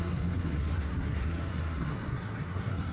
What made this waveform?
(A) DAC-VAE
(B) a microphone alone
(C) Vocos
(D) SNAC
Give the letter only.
D